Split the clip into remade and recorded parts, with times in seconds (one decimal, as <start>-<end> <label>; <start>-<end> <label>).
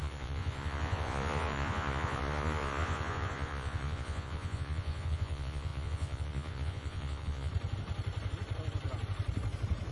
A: 0.0-7.5 remade; 7.5-9.9 recorded